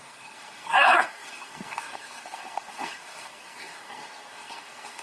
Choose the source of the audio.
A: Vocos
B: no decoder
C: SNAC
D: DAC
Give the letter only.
C